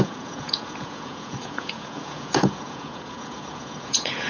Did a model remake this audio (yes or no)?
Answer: yes